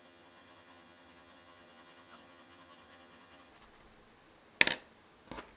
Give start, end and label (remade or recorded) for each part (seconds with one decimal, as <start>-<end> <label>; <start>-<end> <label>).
0.0-3.5 remade; 3.5-5.6 recorded